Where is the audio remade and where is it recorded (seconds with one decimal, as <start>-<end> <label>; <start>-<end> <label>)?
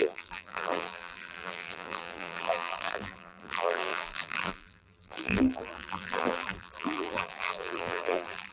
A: 0.0-8.5 remade